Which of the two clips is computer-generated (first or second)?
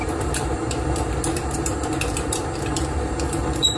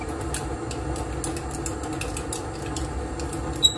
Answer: first